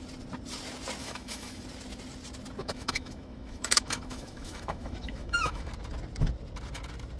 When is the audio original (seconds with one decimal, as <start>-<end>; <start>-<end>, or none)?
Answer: 0.0-1.0; 1.6-2.6; 5.7-7.2